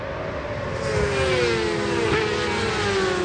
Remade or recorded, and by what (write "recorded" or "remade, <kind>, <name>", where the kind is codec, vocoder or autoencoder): recorded